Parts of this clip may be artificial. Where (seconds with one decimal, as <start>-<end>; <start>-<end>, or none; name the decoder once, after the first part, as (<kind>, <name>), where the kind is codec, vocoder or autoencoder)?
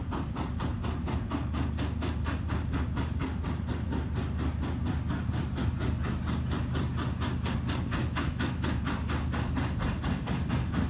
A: 8.0-8.8 (autoencoder, DAC-VAE)